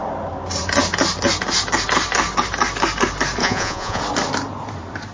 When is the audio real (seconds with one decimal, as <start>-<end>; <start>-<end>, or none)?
0.0-3.4; 4.0-5.1